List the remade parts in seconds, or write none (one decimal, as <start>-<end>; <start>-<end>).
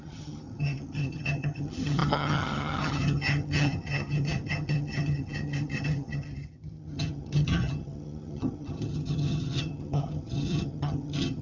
0.0-11.4